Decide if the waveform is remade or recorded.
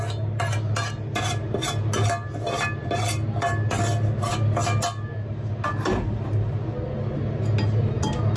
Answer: recorded